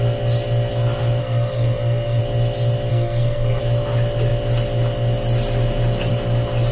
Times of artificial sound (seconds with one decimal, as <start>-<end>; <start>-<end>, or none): 1.2-2.2; 2.9-3.6